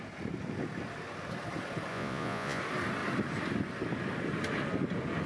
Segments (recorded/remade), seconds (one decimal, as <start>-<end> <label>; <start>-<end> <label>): 0.0-1.9 recorded; 1.9-2.6 remade; 2.6-5.3 recorded